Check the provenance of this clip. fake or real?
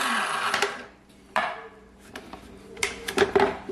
fake